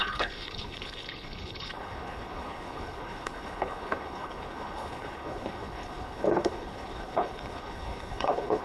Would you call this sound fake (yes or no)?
yes